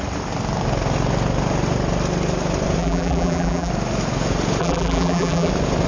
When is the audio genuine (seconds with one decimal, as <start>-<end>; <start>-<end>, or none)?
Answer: 0.0-2.8; 3.7-4.6; 5.5-5.9